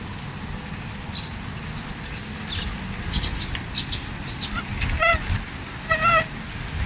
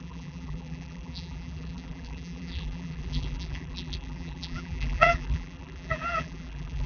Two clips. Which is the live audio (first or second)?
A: first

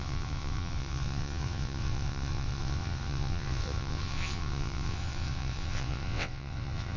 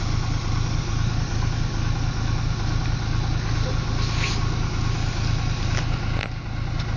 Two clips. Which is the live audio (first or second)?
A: second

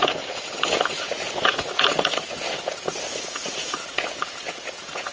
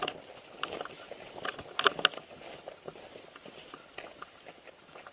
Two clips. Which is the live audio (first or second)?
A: second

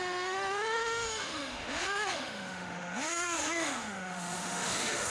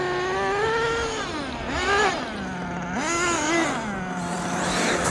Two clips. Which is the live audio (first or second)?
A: second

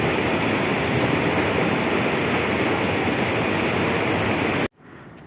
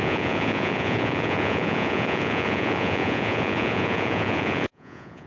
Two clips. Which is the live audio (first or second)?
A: first